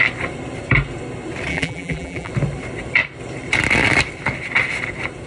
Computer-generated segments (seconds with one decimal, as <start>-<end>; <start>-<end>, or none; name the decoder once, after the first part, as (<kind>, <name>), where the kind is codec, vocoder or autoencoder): 1.5-2.3 (vocoder, BigVGAN v2)